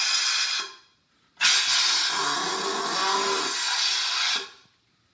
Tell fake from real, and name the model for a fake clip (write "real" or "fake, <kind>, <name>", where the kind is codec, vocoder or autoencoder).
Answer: real